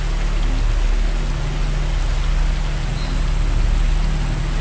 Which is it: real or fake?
real